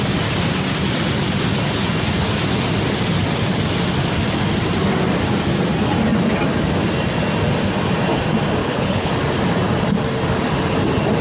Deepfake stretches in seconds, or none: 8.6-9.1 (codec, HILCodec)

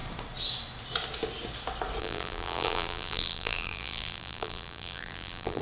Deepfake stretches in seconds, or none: 2.0-5.6 (vocoder, BigVGAN v2)

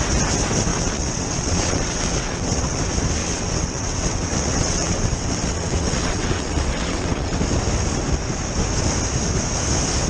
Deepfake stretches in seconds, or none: 0.7-2.8 (vocoder, WaveNeXt); 3.2-7.4

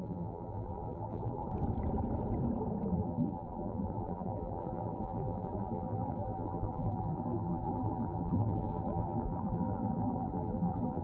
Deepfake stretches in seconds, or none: 0.0-1.4 (vocoder, BigVGAN v2); 2.9-11.0

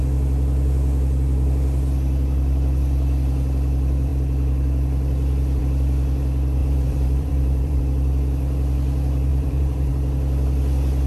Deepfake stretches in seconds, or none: 6.6-7.8 (vocoder, BigVGAN v2); 9.3-9.9